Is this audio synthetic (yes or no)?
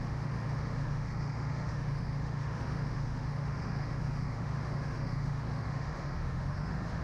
yes